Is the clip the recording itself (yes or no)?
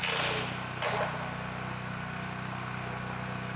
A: yes